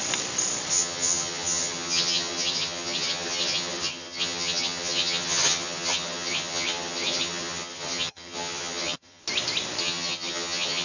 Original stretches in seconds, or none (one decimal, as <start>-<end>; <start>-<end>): 0.0-0.7; 9.2-9.8